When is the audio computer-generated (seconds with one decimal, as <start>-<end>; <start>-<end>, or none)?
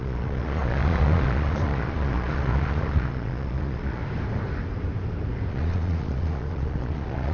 0.0-4.0; 5.5-7.3